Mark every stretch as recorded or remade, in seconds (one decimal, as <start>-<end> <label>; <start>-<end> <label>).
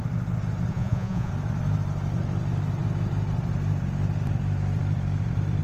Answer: 0.0-0.7 recorded; 0.7-1.3 remade; 1.3-5.6 recorded